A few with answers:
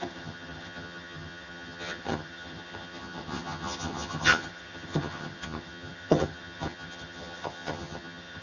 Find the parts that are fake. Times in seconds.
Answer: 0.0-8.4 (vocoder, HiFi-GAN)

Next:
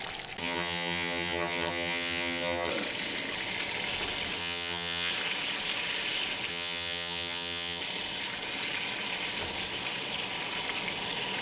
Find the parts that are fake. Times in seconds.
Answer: 0.4-2.7 (vocoder, HiFi-GAN); 4.4-5.1; 6.5-7.8

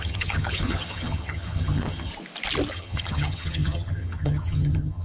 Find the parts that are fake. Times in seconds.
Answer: 0.0-2.1 (vocoder, HiFi-GAN); 2.7-5.0

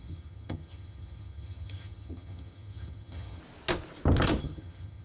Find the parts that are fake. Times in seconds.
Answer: 0.0-3.4 (vocoder, HiFi-GAN); 4.4-5.0

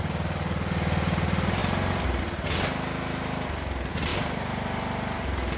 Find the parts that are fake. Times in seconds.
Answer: none

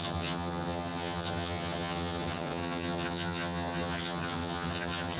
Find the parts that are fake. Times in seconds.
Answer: 0.0-5.2 (vocoder, HiFi-GAN)

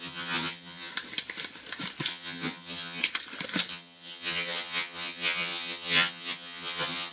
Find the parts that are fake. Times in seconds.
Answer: 0.0-0.9 (vocoder, HiFi-GAN); 2.1-3.0; 3.7-7.1

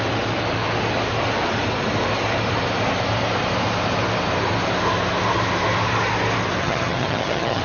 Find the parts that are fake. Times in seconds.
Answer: 6.6-7.6 (vocoder, HiFi-GAN)